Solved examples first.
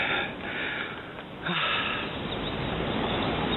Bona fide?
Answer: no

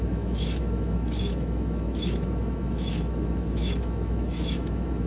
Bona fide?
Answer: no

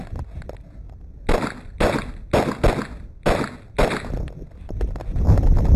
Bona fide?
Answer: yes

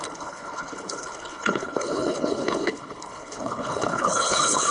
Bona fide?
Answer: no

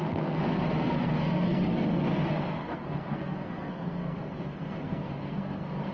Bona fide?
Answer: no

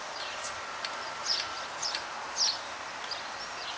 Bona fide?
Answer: yes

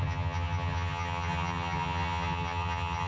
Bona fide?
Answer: no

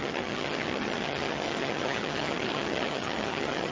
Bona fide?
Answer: no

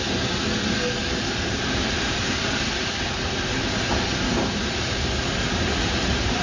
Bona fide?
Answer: yes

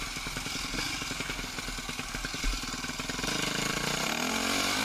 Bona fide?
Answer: yes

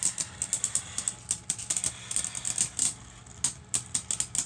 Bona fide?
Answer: yes